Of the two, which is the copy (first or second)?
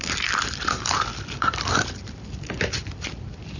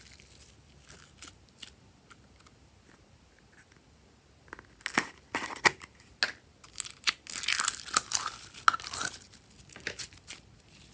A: first